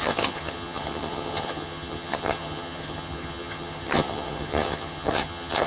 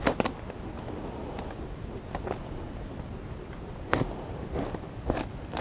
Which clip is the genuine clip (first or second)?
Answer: second